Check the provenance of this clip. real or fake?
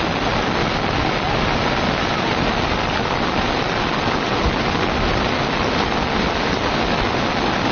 real